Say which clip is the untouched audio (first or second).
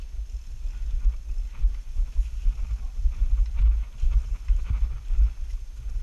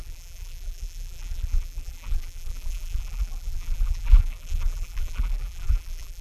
first